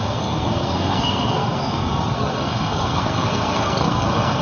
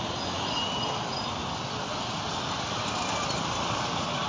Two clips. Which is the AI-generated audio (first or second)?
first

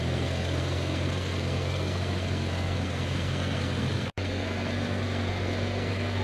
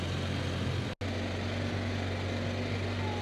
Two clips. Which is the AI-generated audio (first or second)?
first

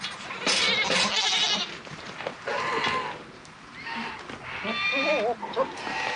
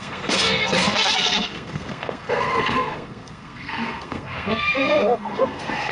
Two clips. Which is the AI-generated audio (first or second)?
second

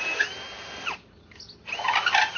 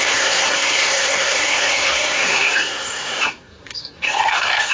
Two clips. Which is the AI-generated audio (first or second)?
second